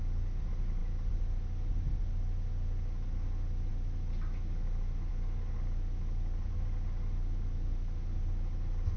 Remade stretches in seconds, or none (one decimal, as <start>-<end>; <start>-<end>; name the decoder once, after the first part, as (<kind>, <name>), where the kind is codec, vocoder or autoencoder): none